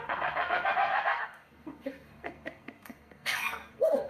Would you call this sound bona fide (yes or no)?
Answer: no